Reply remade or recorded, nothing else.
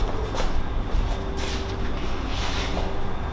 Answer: recorded